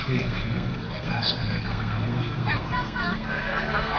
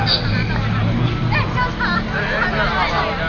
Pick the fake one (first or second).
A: first